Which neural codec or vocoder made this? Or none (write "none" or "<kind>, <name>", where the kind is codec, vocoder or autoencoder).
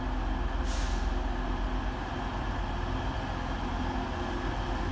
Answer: none